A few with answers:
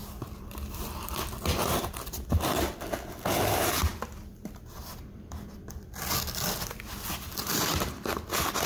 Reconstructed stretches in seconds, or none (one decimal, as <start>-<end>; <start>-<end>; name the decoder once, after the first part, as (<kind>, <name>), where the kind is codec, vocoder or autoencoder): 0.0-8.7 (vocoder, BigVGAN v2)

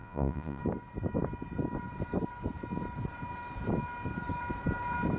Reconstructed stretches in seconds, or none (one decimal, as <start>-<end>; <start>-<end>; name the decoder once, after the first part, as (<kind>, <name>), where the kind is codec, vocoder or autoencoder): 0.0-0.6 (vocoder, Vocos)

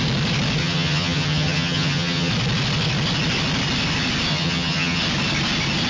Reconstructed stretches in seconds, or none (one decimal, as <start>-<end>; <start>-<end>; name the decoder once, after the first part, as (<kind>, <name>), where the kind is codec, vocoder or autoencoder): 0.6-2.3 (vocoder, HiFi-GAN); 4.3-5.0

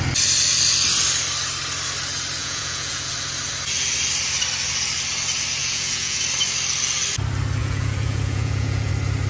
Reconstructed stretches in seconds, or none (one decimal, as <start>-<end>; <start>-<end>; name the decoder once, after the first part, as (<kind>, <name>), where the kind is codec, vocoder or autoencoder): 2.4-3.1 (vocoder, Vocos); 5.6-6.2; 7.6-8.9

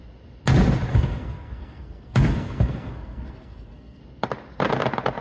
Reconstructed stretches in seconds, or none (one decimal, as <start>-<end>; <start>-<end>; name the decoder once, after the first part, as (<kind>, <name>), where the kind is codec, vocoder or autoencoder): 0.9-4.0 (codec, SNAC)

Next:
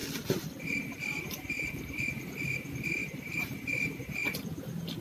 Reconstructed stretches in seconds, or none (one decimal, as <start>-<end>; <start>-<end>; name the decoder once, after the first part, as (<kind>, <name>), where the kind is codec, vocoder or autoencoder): 0.6-4.2 (vocoder, BigVGAN v2)

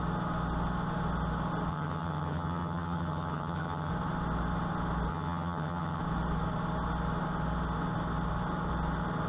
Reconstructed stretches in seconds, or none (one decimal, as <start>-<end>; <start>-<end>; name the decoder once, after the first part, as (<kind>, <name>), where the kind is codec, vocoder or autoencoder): 1.7-3.9 (vocoder, HiFi-GAN); 5.1-6.0

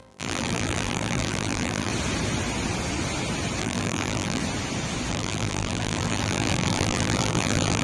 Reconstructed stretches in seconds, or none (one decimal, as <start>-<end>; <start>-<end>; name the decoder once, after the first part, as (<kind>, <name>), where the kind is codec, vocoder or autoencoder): 0.0-1.9 (vocoder, BigVGAN v2); 3.6-4.4; 5.1-7.8